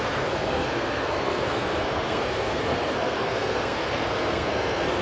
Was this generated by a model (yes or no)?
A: yes